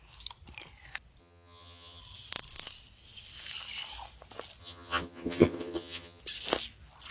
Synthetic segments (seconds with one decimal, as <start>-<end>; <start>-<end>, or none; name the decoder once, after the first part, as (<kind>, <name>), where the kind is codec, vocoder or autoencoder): 1.2-2.0 (vocoder, HiFi-GAN); 4.6-6.2